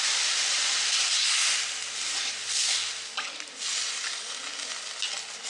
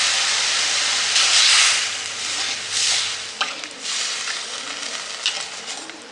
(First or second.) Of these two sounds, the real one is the first